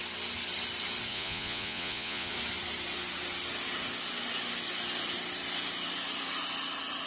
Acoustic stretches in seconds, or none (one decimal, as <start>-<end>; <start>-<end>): 0.0-1.1; 2.3-7.1